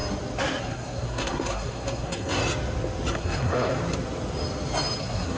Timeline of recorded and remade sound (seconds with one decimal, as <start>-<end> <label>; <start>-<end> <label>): 0.0-0.6 recorded; 0.6-2.4 remade; 2.4-3.1 recorded; 3.1-3.8 remade; 3.8-5.0 recorded; 5.0-5.4 remade

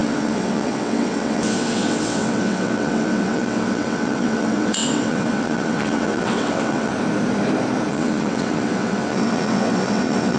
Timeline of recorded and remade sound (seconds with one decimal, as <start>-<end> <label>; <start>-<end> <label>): 0.0-6.9 remade; 6.9-7.9 recorded; 7.9-10.4 remade

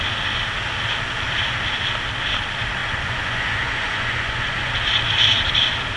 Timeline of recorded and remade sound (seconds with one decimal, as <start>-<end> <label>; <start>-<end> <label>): 0.0-2.8 recorded; 2.8-4.7 remade; 4.7-6.0 recorded

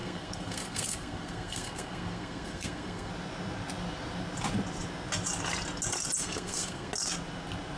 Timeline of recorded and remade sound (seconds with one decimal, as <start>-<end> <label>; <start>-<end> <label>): 0.0-3.1 remade; 3.1-6.2 recorded; 6.2-6.9 remade; 6.9-7.8 recorded

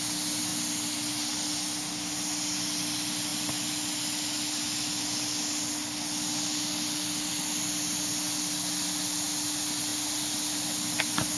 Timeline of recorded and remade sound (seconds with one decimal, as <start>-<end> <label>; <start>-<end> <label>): 0.0-11.4 recorded

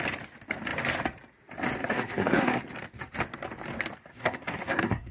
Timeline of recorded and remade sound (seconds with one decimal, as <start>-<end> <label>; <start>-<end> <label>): 0.0-1.8 recorded; 1.8-2.6 remade; 2.6-4.1 recorded; 4.1-5.1 remade

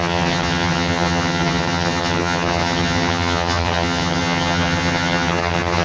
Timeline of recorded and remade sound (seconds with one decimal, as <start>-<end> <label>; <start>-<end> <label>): 0.0-5.8 remade